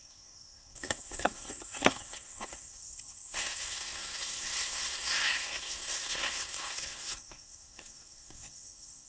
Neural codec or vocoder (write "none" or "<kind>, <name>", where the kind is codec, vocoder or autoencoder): codec, SNAC